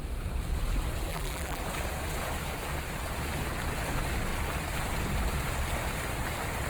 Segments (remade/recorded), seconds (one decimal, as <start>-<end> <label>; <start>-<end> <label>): 0.0-1.1 recorded; 1.1-1.6 remade; 1.6-6.7 recorded